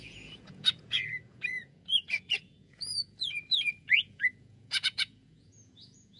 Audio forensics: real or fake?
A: fake